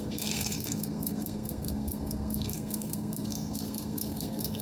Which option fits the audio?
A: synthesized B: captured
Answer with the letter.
A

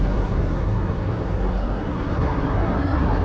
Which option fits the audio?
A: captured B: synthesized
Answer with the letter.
B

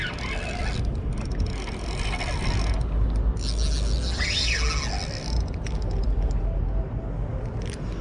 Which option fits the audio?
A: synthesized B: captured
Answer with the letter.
B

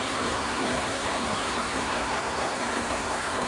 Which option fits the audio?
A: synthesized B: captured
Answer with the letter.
A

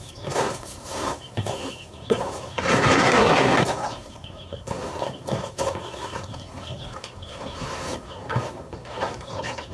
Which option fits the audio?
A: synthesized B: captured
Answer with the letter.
A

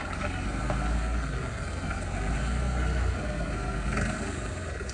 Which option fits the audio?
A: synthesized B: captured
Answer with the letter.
A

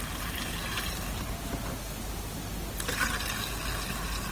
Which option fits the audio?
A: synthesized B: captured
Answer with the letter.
B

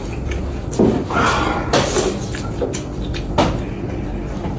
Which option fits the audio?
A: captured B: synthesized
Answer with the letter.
A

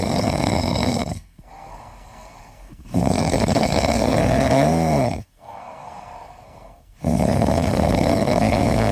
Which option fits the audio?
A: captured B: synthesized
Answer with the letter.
B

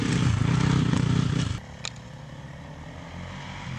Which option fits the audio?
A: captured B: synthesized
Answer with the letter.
A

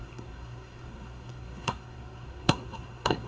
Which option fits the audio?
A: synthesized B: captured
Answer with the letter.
A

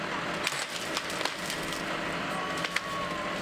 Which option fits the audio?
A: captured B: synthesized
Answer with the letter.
A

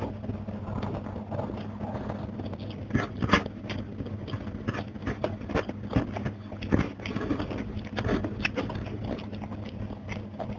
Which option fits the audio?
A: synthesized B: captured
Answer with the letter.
B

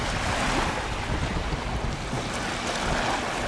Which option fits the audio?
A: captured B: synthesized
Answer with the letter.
A